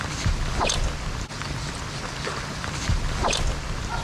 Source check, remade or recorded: recorded